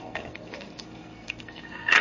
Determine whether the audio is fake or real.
fake